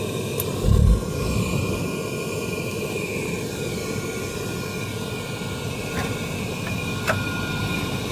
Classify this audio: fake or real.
real